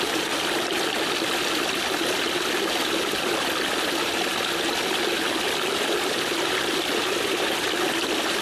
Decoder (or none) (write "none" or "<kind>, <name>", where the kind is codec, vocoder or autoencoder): none